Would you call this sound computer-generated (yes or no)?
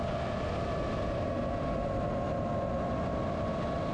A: no